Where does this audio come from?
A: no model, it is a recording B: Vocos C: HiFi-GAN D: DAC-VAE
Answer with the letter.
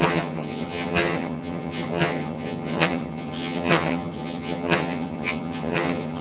C